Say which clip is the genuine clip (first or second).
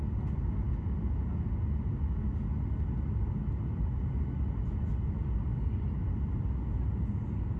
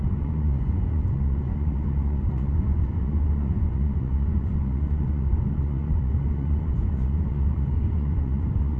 first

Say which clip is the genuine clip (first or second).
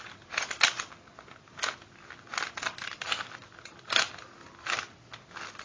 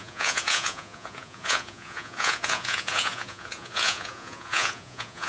first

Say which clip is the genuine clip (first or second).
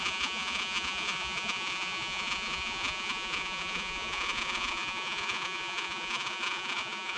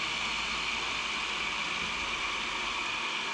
second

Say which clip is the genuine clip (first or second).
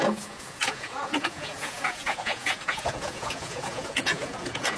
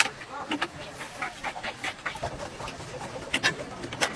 second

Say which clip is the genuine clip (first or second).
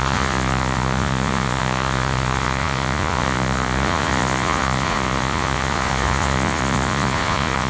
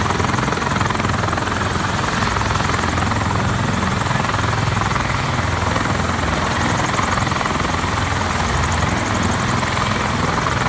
second